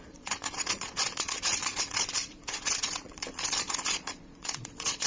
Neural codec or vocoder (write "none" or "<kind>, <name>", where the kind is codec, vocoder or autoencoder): vocoder, Vocos